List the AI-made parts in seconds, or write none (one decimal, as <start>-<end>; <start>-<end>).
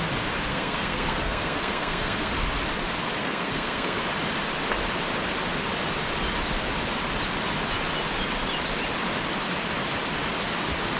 0.5-2.3; 3.2-4.0